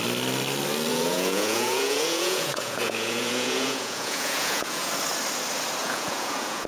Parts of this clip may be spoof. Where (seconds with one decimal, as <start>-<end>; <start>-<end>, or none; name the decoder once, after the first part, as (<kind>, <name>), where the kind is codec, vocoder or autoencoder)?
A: 0.9-4.9 (vocoder, Vocos); 5.8-6.7